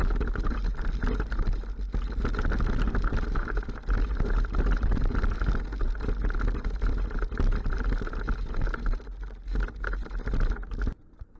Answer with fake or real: real